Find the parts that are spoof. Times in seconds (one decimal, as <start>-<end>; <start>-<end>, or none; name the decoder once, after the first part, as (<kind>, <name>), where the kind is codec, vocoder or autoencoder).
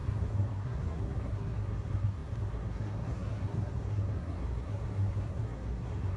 0.0-6.2 (codec, SNAC)